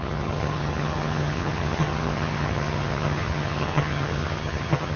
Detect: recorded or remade remade